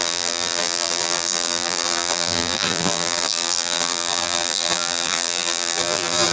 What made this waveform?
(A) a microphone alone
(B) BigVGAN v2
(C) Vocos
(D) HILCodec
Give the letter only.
B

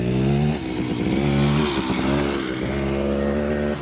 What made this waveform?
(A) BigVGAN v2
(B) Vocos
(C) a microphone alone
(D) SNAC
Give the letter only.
C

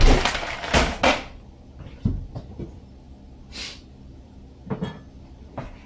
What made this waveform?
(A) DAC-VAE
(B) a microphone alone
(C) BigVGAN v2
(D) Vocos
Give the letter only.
B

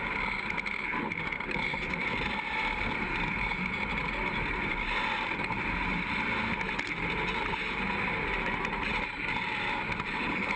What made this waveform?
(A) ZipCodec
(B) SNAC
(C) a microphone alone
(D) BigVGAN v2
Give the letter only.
D